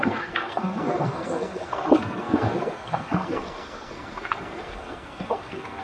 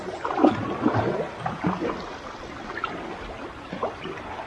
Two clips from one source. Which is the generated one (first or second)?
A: first